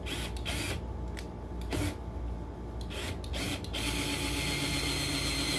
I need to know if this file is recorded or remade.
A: recorded